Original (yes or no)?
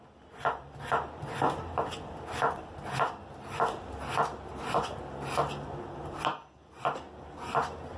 yes